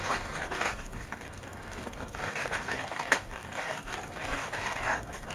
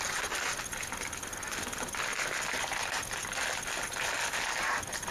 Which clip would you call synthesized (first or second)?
first